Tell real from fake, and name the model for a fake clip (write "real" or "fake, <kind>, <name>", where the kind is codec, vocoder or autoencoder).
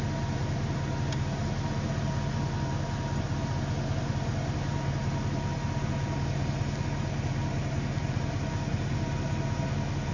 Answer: real